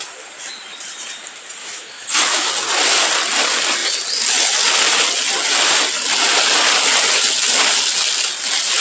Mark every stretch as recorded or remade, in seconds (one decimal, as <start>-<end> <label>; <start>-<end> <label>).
0.0-1.6 recorded; 1.6-2.5 remade; 2.5-8.8 recorded